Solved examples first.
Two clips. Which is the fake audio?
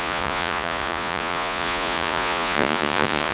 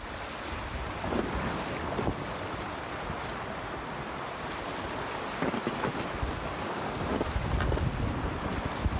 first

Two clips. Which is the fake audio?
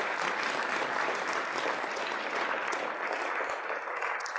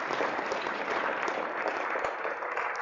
second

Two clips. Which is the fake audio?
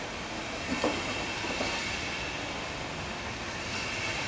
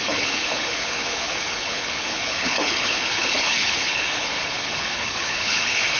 second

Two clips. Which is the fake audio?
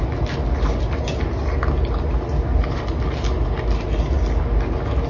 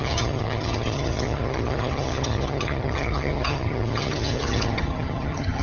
second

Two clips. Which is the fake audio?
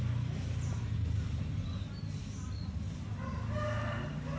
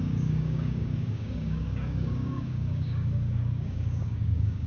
second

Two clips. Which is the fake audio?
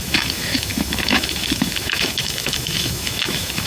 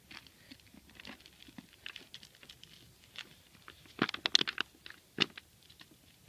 first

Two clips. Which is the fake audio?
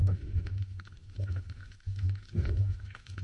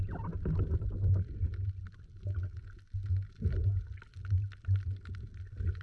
first